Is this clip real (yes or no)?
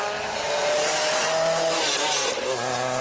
yes